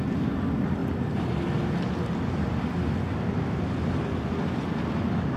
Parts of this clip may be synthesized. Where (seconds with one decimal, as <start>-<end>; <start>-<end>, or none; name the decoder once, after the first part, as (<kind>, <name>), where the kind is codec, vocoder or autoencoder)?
none